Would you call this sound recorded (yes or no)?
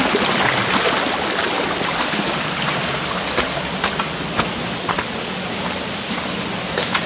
yes